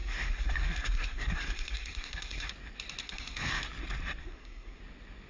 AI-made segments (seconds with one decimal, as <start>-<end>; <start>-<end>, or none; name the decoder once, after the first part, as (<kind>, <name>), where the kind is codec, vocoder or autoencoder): 0.0-2.5 (codec, SNAC); 3.0-3.6; 4.2-4.8